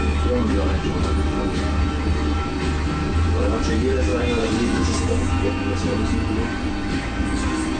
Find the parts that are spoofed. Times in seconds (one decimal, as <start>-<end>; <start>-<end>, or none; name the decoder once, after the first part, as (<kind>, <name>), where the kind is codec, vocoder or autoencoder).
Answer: none